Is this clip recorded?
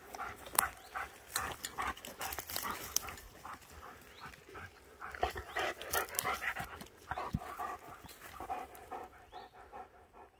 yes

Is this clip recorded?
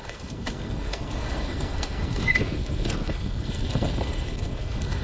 no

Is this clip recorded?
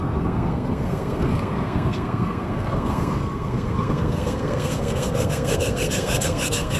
no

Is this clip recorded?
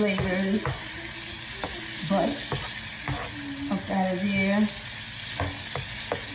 yes